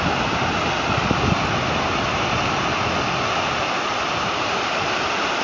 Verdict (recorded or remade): recorded